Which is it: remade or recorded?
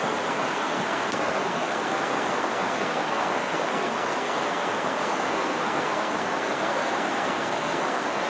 remade